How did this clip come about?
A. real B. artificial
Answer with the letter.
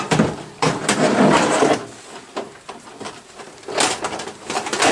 B